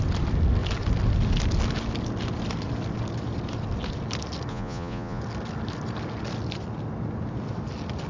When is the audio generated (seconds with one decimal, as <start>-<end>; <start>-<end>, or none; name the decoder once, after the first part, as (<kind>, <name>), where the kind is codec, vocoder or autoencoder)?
4.5-5.2 (vocoder, Vocos)